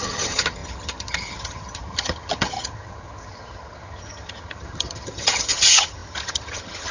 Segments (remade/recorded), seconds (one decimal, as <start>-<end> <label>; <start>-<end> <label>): 0.0-6.9 remade